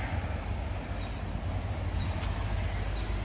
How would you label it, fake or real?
real